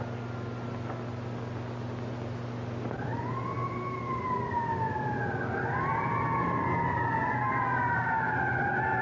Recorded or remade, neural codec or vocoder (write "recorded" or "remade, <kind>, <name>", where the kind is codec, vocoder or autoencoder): recorded